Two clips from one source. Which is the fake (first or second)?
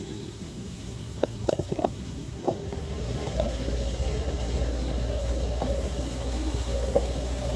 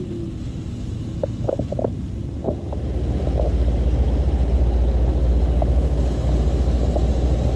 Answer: first